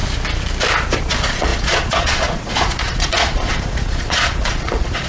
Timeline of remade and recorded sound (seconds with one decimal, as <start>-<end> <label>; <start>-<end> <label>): 0.0-1.0 recorded; 1.0-5.1 remade